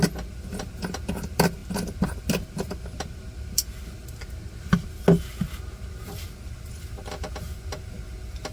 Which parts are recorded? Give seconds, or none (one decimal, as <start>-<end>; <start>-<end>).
0.0-8.5